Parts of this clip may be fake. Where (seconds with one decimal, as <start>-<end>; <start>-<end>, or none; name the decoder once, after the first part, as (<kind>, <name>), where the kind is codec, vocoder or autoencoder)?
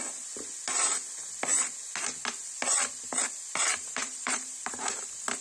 3.7-5.0 (vocoder, BigVGAN v2)